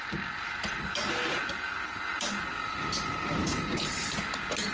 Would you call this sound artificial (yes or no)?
no